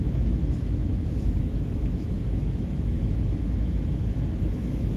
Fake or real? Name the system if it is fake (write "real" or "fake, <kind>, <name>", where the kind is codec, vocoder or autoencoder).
fake, autoencoder, DAC-VAE